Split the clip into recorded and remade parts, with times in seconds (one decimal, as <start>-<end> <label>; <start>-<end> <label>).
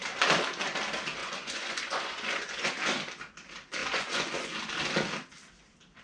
0.0-1.2 recorded; 1.2-2.7 remade; 2.7-3.8 recorded; 3.8-4.6 remade; 4.6-6.0 recorded